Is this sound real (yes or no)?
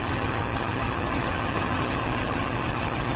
no